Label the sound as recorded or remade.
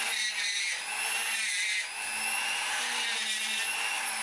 recorded